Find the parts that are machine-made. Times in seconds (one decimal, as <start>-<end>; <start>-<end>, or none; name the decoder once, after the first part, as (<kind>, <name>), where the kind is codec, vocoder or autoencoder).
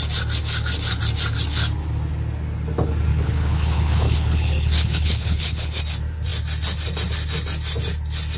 3.1-5.8 (codec, HILCodec)